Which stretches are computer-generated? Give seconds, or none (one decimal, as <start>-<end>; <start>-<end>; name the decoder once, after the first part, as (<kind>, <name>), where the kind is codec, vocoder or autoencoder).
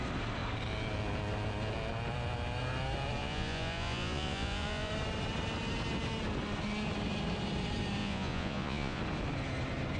3.2-4.9 (vocoder, Vocos); 8.0-9.0